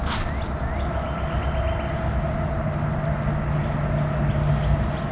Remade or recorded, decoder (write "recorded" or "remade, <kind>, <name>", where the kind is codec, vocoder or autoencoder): recorded